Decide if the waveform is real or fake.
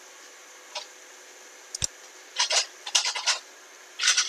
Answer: real